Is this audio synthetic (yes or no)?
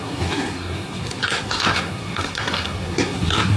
yes